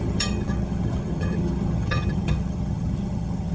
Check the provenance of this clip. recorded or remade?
remade